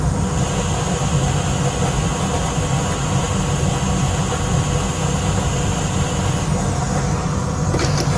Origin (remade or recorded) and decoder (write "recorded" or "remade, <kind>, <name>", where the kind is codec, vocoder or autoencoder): recorded